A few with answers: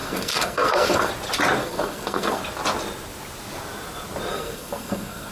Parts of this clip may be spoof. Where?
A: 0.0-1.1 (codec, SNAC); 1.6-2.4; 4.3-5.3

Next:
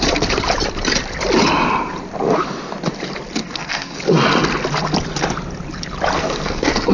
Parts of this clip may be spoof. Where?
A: 3.4-4.0 (codec, SNAC); 6.2-6.9